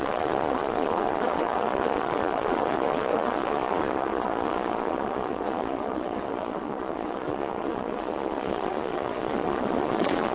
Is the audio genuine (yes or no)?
no